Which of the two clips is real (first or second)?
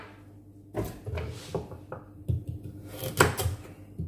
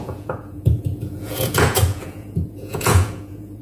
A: first